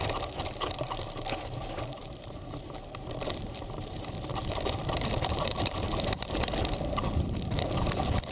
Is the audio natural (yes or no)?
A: no